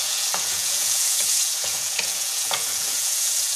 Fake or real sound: fake